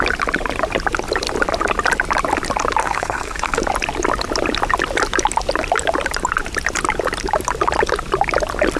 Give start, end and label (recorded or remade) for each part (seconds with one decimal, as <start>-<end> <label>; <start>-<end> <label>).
0.0-2.8 recorded; 2.8-3.6 remade; 3.6-8.8 recorded